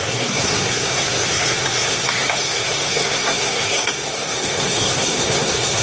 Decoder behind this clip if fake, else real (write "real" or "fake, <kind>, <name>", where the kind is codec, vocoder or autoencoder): fake, codec, SNAC